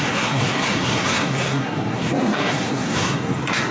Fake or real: fake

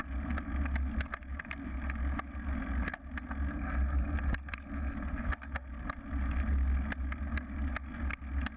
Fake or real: real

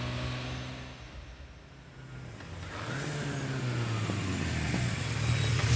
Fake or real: real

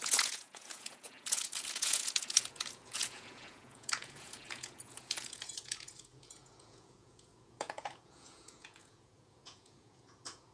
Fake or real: fake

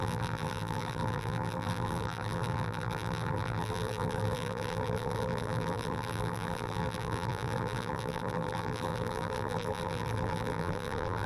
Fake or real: fake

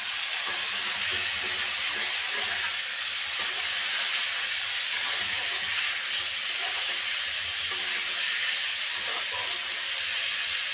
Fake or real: real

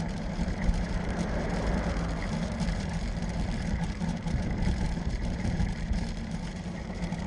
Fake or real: fake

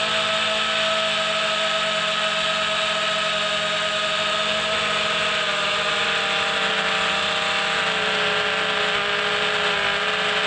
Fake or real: real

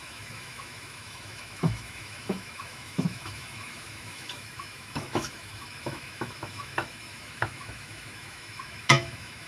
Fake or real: fake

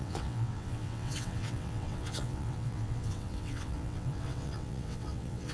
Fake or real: fake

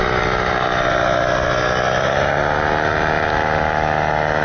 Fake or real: real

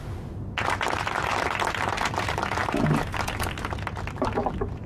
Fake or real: real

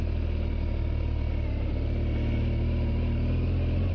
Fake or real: real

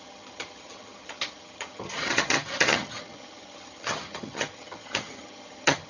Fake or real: fake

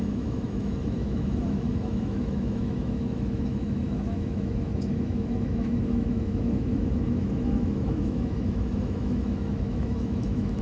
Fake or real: fake